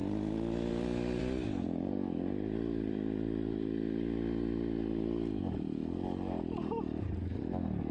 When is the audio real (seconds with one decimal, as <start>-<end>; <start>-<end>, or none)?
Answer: 0.0-7.9